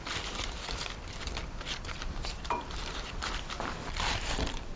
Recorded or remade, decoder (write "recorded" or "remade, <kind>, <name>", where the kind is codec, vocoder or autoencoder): remade, vocoder, BigVGAN v2